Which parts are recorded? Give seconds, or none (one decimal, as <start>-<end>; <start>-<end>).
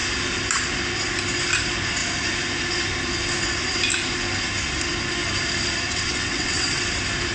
0.0-5.9; 6.8-7.3